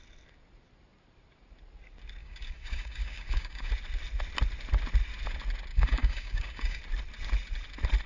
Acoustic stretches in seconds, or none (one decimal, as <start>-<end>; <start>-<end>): 0.0-2.2; 3.7-5.7; 6.8-8.1